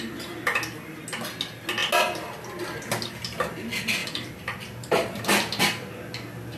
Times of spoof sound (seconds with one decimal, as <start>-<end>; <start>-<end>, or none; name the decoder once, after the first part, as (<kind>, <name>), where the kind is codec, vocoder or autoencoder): 4.0-5.2 (vocoder, BigVGAN v2)